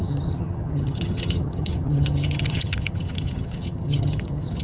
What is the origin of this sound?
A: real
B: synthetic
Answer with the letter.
B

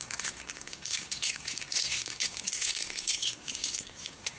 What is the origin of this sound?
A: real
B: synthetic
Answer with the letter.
B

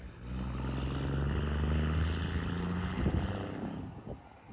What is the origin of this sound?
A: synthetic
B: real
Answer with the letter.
B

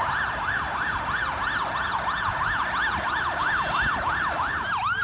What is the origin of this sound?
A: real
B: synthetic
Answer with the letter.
A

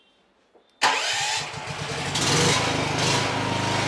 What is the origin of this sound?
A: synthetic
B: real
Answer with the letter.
B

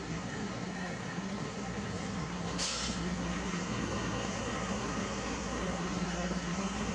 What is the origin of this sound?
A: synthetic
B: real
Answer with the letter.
A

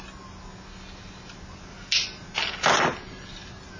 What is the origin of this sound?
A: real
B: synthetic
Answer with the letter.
A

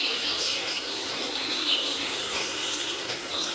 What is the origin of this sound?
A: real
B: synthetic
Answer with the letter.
B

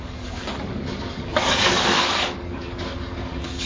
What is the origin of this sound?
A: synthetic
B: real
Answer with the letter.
A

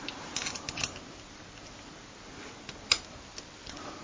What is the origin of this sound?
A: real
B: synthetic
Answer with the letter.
A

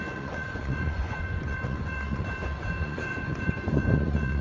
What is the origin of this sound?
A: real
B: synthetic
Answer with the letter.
B